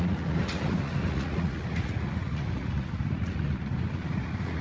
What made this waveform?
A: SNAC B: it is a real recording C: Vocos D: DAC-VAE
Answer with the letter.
C